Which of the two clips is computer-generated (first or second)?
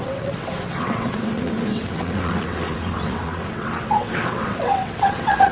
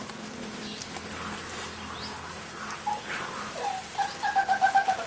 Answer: first